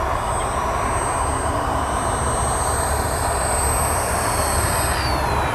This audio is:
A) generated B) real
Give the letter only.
B